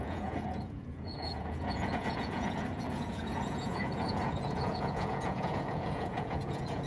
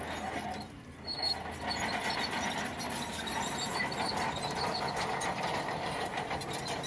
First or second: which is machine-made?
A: first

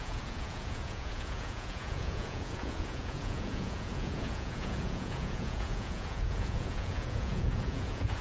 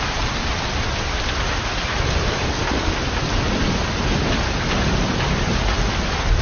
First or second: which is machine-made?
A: first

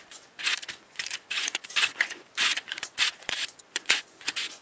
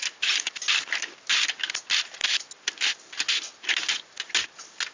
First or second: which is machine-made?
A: first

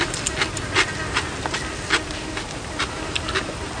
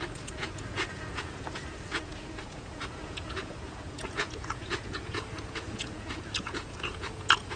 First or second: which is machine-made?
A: second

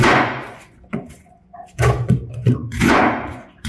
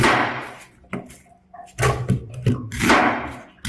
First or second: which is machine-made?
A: first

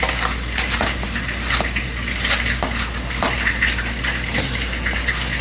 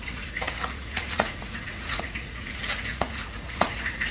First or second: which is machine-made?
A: second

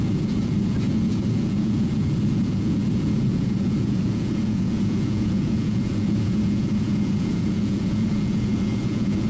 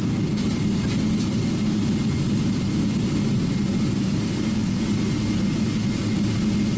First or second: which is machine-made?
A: first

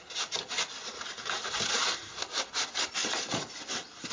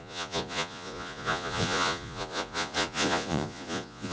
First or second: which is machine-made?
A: second